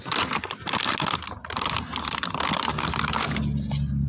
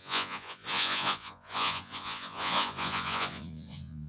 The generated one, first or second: second